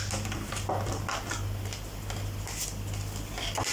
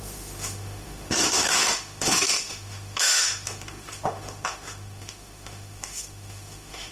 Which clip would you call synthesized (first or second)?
second